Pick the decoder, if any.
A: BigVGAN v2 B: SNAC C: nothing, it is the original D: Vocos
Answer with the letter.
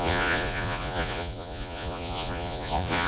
D